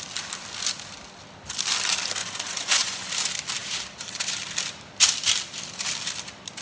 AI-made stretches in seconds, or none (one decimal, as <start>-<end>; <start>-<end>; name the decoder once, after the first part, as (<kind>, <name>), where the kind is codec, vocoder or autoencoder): 2.2-3.1 (vocoder, Vocos)